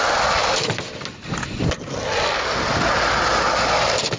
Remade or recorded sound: recorded